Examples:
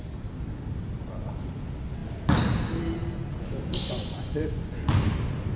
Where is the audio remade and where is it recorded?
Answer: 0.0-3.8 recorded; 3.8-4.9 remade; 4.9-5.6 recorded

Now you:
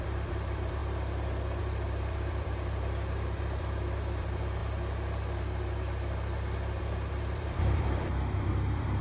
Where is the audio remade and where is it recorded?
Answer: 0.0-0.8 remade; 0.8-1.6 recorded; 1.6-4.6 remade; 4.6-6.8 recorded; 6.8-9.0 remade

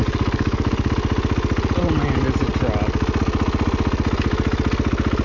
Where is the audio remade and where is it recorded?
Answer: 0.0-0.9 remade; 0.9-5.2 recorded

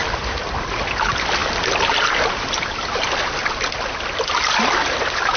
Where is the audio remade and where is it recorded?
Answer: 0.0-5.4 recorded

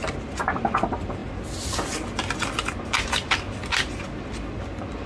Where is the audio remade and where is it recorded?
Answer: 0.0-5.1 recorded

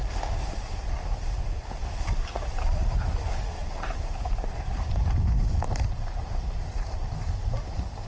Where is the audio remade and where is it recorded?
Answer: 0.0-3.6 recorded; 3.6-6.7 remade; 6.7-8.1 recorded

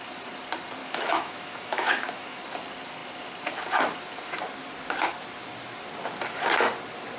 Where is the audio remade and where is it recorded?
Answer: 0.0-0.8 recorded; 0.8-2.4 remade; 2.4-7.2 recorded

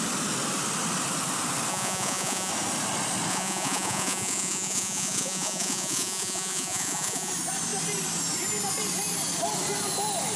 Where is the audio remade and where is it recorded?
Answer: 0.0-1.7 recorded; 1.7-2.5 remade; 2.5-3.3 recorded; 3.3-7.3 remade; 7.3-10.4 recorded